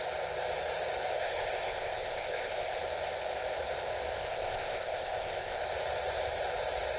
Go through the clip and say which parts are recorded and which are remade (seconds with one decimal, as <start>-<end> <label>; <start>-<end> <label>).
0.0-1.1 recorded; 1.1-2.8 remade; 2.8-4.2 recorded; 4.2-5.6 remade; 5.6-7.0 recorded